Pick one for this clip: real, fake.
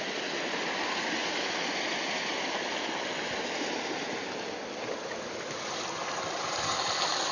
real